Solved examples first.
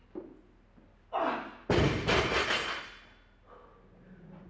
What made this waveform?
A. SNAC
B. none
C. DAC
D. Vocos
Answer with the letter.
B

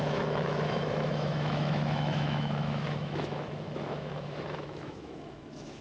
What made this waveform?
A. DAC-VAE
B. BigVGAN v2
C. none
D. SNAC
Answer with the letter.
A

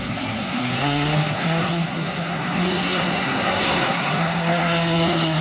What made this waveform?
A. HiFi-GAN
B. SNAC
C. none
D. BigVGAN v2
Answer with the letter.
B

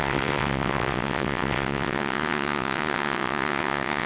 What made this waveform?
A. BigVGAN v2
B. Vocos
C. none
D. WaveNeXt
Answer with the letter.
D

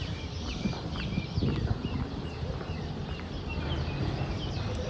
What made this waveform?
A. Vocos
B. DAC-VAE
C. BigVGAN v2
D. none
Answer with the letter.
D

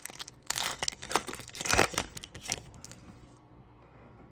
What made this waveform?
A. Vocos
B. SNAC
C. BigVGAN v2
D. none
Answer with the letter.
B